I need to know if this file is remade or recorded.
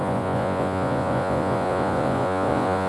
remade